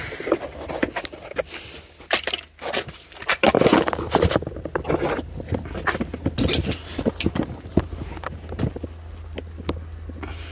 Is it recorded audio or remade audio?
recorded